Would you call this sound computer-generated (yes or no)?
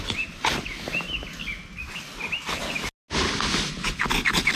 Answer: no